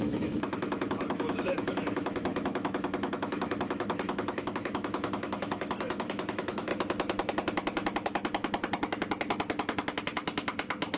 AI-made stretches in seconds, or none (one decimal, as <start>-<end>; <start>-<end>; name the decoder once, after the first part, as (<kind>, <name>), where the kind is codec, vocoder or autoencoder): 0.0-6.7 (autoencoder, DAC-VAE)